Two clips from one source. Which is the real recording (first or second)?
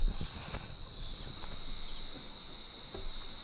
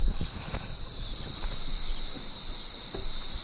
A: first